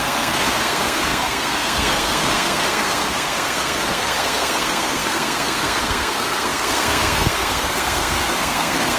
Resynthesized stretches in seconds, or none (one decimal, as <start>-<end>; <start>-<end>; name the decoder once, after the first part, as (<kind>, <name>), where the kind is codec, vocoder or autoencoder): 0.0-9.0 (codec, SNAC)